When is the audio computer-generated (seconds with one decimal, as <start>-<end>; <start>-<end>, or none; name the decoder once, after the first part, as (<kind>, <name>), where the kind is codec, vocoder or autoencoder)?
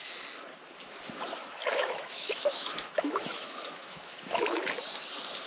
1.4-4.7 (autoencoder, DAC-VAE)